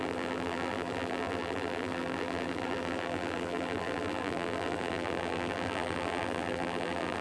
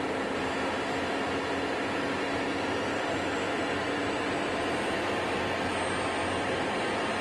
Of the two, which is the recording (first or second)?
second